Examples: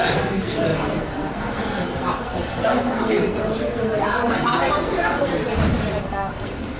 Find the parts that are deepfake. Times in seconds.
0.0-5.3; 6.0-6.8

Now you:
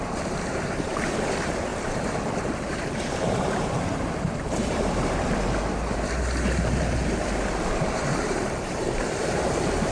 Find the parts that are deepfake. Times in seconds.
0.0-9.9

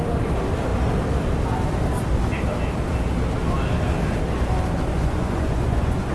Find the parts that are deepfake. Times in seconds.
4.9-6.1

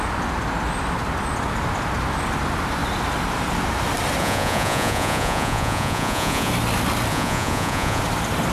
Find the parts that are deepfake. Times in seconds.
4.2-6.5; 7.1-8.0

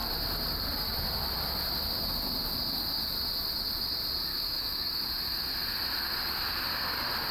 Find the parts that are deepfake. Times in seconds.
4.3-5.0